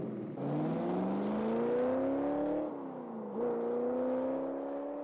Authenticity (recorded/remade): recorded